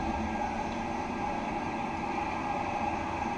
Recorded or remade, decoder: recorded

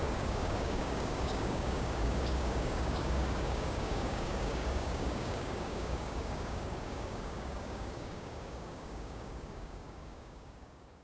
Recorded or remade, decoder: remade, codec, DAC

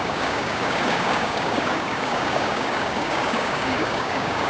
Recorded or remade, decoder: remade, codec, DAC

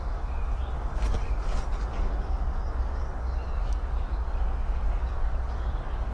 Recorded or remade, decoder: remade, codec, DAC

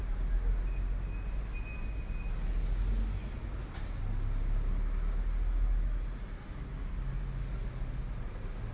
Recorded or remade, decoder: recorded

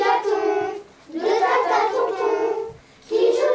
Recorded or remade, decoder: recorded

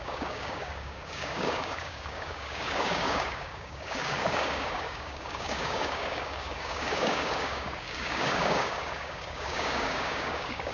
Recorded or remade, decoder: remade, codec, DAC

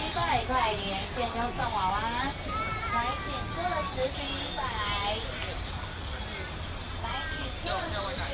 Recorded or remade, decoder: recorded